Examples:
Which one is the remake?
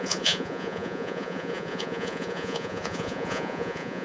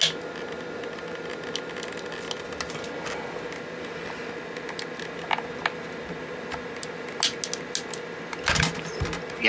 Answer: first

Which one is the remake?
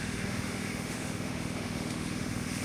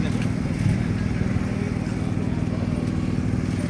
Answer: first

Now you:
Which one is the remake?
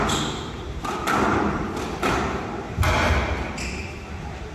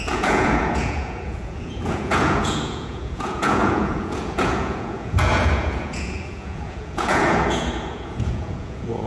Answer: second